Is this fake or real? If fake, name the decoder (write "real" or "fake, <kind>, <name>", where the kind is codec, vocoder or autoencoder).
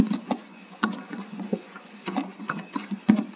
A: fake, vocoder, Vocos